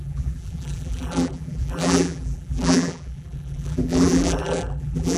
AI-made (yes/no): yes